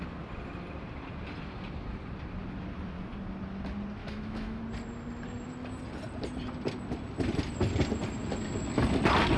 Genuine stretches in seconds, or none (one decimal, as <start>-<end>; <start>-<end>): 0.0-4.0; 4.6-9.4